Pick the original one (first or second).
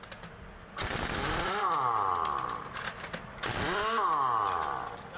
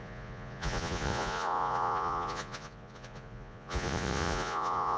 first